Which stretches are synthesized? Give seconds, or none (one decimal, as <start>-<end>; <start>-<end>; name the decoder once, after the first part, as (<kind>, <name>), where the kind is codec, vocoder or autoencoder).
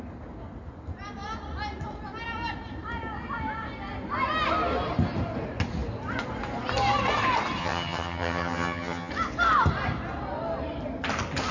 7.6-9.1 (vocoder, HiFi-GAN)